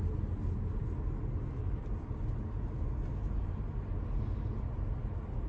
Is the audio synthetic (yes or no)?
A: no